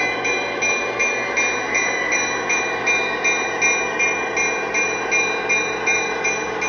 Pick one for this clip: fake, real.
real